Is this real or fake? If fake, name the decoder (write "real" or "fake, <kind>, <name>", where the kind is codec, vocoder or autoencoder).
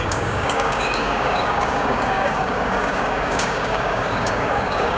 fake, codec, DAC